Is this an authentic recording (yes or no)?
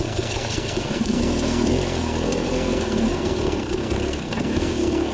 no